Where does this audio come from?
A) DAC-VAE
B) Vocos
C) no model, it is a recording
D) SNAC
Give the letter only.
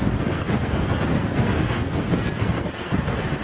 D